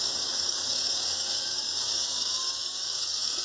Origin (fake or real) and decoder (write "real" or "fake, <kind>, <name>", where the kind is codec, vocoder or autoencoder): fake, codec, DAC